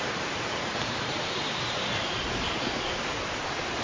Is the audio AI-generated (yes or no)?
yes